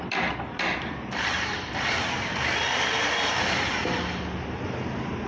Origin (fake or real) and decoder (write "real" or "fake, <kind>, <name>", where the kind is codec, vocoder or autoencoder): real